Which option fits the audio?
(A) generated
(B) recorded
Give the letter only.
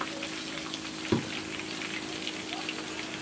B